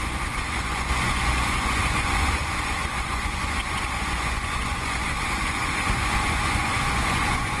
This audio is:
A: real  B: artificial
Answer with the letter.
B